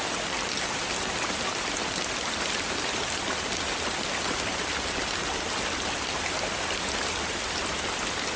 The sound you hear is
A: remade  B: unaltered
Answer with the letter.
B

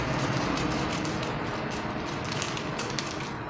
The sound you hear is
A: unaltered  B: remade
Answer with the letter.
A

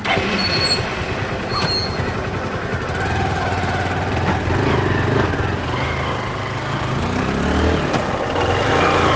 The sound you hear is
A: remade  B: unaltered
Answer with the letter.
B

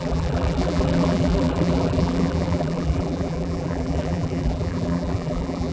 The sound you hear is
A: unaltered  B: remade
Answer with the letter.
B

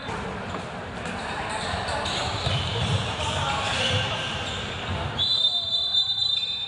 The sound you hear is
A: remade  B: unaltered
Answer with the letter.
A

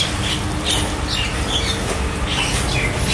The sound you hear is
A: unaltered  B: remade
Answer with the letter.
A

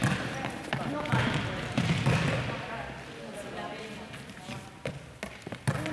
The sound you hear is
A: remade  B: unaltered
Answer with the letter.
B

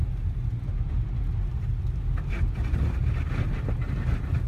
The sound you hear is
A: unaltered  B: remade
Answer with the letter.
A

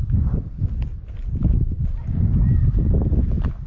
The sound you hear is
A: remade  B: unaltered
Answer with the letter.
A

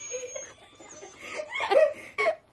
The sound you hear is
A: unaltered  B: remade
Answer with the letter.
A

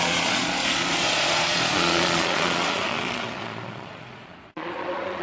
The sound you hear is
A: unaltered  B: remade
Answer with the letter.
B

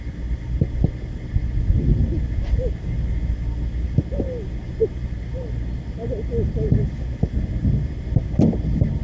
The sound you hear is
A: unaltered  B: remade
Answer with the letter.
A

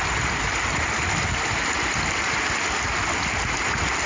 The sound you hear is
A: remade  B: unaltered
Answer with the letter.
B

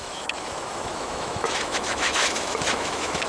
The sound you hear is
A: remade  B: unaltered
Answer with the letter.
A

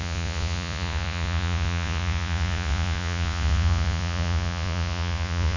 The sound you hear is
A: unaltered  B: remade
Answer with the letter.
B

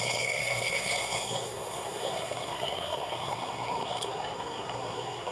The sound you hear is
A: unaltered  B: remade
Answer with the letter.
B